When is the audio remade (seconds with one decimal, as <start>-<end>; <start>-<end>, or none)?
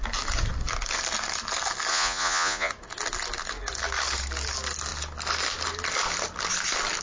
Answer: 1.9-2.7